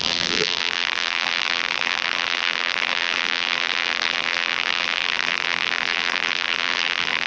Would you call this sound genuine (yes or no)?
no